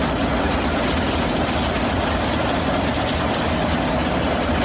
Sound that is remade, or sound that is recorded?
recorded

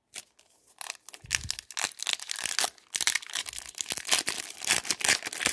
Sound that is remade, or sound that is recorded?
recorded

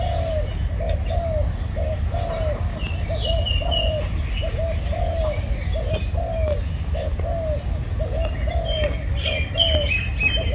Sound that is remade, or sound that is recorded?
recorded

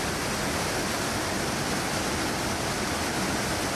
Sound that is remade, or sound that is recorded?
recorded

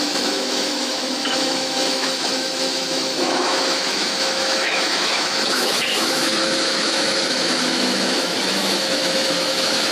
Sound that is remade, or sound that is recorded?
remade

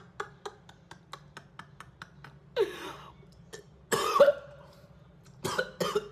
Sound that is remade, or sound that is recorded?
recorded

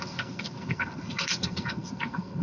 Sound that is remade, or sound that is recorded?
remade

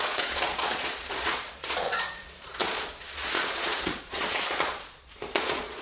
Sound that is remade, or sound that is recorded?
remade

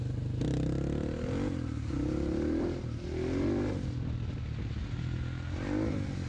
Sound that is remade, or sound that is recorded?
recorded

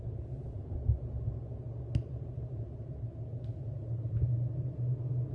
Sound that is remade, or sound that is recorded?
recorded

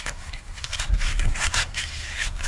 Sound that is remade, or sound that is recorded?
remade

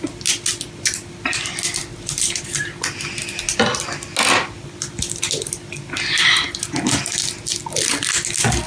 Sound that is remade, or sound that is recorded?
recorded